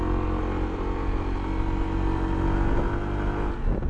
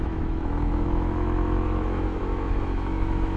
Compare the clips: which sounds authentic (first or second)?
first